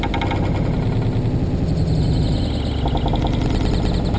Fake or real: real